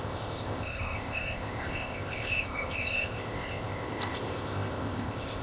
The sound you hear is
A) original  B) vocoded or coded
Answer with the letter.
B